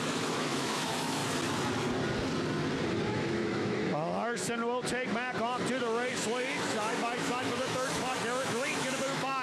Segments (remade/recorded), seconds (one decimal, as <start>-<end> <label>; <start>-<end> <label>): 0.0-1.2 remade; 1.2-3.1 recorded; 3.1-4.6 remade; 4.6-6.1 recorded; 6.1-9.4 remade